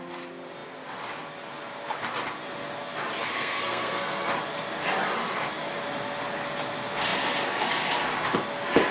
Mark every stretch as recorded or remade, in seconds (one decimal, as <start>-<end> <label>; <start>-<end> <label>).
0.0-3.2 recorded; 3.2-4.3 remade; 4.3-8.9 recorded